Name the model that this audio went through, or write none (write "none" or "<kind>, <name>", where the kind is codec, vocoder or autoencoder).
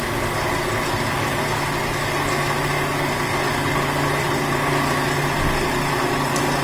none